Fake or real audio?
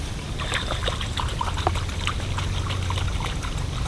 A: real